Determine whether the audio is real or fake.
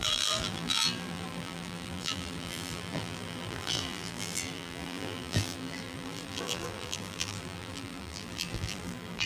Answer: fake